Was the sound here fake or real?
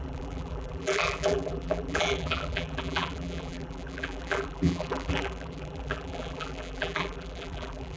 fake